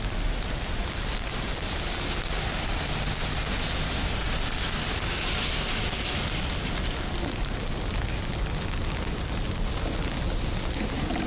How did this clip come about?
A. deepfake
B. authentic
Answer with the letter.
B